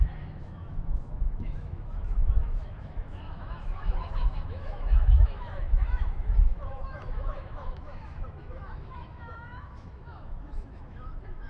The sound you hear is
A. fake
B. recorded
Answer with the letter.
A